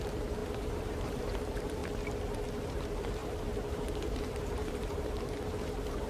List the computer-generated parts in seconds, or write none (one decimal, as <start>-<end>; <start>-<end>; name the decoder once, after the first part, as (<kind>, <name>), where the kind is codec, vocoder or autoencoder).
0.0-1.8 (vocoder, BigVGAN v2); 2.7-6.1